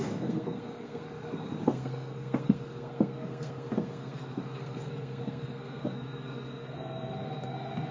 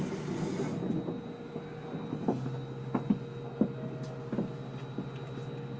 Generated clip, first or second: first